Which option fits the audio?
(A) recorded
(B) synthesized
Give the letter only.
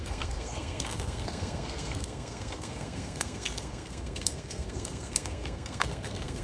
B